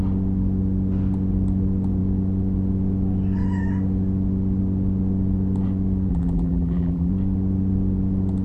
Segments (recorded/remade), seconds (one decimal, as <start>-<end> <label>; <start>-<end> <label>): 0.0-6.1 recorded; 6.1-7.1 remade; 7.1-8.4 recorded